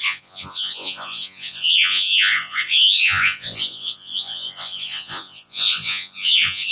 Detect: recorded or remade remade